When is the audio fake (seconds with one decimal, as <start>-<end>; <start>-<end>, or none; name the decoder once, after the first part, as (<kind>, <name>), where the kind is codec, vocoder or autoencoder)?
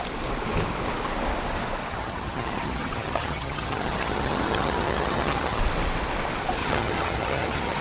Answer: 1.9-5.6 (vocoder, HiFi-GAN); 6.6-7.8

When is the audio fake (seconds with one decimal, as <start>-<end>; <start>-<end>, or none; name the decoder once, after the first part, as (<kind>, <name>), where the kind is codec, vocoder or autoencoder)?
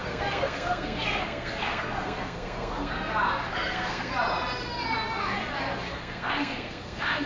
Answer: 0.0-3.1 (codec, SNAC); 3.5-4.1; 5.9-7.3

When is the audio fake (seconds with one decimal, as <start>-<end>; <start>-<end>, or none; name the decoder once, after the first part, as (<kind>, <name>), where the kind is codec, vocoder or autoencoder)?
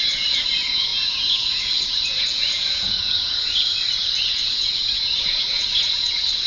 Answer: 0.0-6.5 (vocoder, Vocos)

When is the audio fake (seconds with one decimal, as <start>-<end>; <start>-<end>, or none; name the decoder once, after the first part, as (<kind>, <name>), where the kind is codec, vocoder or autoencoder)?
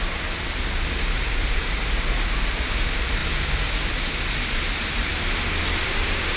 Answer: 0.0-3.2 (vocoder, BigVGAN v2); 3.9-5.1; 5.6-6.4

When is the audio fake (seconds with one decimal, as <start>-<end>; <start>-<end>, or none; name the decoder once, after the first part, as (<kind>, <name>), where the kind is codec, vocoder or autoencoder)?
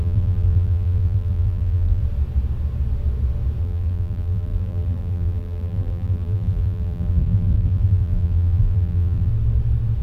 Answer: 0.0-2.0 (vocoder, BigVGAN v2); 3.6-9.3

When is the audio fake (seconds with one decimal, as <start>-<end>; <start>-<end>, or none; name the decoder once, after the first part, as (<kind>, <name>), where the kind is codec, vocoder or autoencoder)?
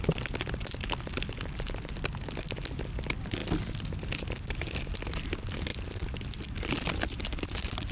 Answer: none